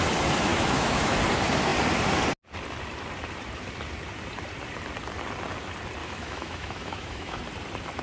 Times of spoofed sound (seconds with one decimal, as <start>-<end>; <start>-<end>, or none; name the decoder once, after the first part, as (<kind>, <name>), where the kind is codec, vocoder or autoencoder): 0.5-1.2 (autoencoder, DAC-VAE); 6.0-7.4